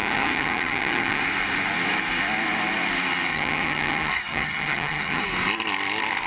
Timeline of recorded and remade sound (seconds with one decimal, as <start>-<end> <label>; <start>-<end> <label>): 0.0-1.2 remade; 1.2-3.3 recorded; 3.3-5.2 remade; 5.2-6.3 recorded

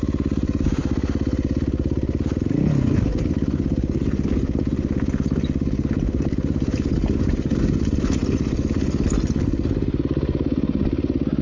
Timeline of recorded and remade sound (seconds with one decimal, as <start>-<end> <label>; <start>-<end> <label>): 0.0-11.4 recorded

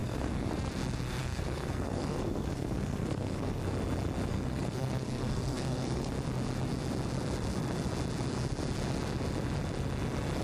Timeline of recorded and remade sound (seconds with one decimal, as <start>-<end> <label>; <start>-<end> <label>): 0.0-0.5 remade; 0.5-1.2 recorded; 1.2-3.6 remade; 3.6-4.3 recorded; 4.3-6.1 remade; 6.1-10.4 recorded

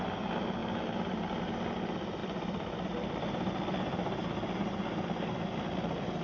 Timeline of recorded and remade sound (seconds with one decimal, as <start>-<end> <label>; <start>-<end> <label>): 0.0-2.2 recorded; 2.2-3.5 remade; 3.5-6.2 recorded

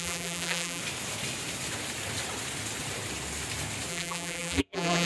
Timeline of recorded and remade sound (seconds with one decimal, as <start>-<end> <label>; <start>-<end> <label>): 0.0-0.8 remade; 0.8-3.9 recorded; 3.9-5.1 remade